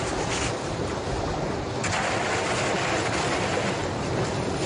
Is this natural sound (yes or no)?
yes